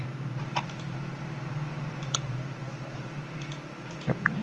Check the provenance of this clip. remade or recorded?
remade